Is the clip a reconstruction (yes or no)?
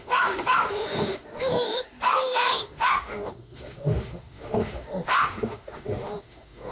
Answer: yes